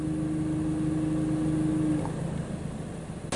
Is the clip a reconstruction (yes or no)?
no